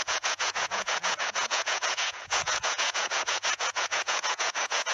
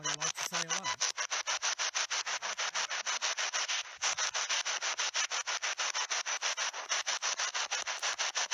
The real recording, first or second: second